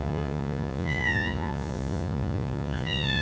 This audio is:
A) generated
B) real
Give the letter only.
A